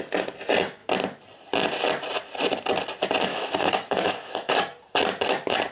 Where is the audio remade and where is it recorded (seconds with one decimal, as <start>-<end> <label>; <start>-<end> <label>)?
0.0-3.3 recorded; 3.3-4.5 remade; 4.5-5.7 recorded